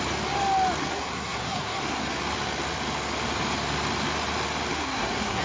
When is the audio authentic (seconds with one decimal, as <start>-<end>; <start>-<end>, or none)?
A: 0.0-0.8; 2.0-4.7